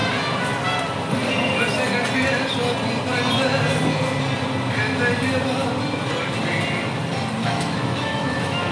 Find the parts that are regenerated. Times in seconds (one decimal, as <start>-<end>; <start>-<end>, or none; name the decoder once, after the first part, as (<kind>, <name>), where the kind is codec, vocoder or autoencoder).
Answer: 7.4-8.7 (autoencoder, DAC-VAE)